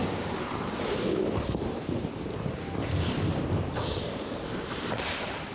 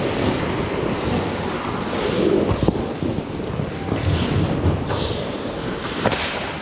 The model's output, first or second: first